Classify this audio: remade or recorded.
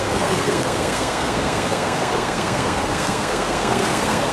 remade